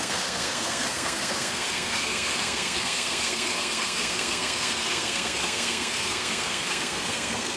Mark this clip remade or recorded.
remade